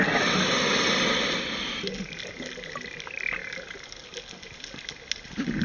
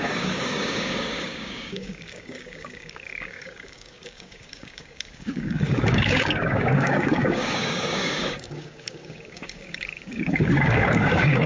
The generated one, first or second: second